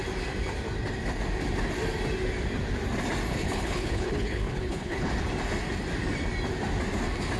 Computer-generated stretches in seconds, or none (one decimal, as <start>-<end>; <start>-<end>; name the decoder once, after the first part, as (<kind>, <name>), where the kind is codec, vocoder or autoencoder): 3.3-5.1 (codec, HILCodec)

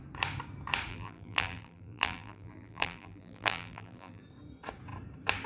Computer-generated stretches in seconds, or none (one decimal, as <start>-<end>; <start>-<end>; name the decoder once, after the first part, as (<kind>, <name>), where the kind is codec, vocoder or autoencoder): 0.9-4.2 (vocoder, BigVGAN v2)

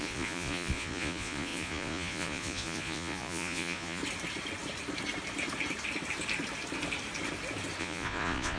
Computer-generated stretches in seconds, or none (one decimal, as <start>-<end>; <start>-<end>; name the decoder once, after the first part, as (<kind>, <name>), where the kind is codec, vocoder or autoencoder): 0.0-4.0 (vocoder, Vocos); 7.8-8.6

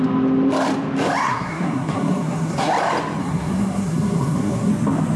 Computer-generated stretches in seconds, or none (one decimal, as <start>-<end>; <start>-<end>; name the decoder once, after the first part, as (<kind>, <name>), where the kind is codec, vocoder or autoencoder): 1.2-2.7 (codec, SNAC); 3.2-4.7

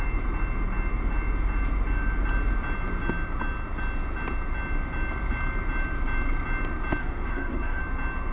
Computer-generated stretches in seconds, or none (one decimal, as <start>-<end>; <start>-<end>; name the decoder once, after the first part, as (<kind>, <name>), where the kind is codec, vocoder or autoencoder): 7.0-7.8 (autoencoder, DAC-VAE)

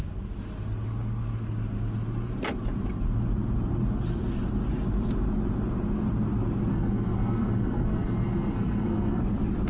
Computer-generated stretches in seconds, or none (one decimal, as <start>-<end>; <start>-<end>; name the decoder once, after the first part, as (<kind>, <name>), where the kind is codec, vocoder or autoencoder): 6.7-9.2 (codec, SNAC)